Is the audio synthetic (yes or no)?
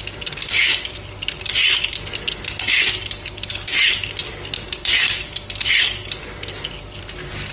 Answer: no